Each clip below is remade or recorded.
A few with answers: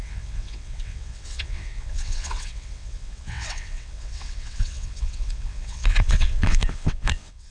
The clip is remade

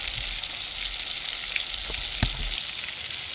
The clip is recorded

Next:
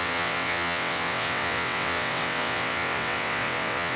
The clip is remade